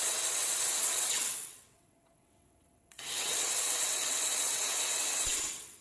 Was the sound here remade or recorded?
remade